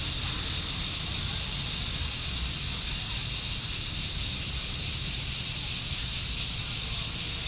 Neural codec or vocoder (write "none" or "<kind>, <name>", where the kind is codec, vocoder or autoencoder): none